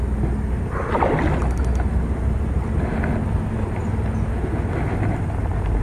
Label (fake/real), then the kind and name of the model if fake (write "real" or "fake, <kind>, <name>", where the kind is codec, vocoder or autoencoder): real